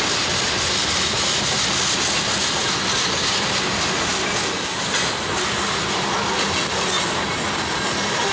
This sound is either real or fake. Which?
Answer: real